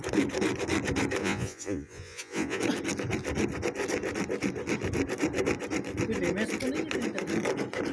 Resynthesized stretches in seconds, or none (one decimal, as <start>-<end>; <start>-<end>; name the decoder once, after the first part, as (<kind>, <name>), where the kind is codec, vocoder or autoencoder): 1.2-2.6 (vocoder, Vocos)